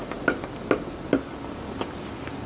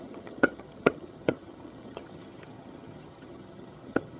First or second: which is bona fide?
first